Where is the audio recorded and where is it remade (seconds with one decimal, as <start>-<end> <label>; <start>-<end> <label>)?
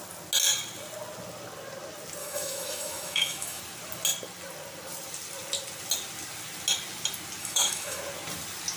0.0-2.2 recorded; 2.2-3.6 remade; 3.6-7.4 recorded; 7.4-8.0 remade; 8.0-8.8 recorded